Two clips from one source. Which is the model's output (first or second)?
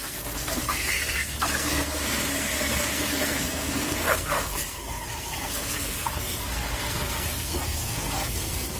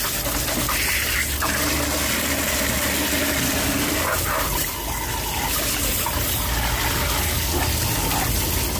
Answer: first